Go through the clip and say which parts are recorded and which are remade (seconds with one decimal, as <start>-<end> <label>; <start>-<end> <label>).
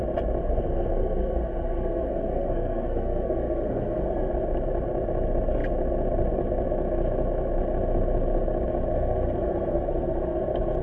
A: 0.0-0.4 recorded; 0.4-4.3 remade; 4.3-8.9 recorded; 8.9-10.4 remade; 10.4-10.8 recorded